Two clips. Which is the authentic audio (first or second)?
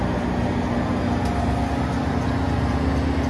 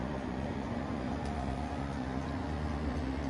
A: first